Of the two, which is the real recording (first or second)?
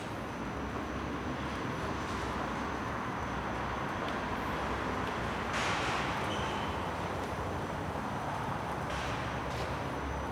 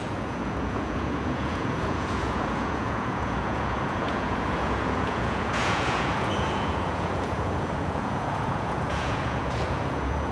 first